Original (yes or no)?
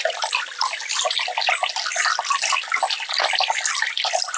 yes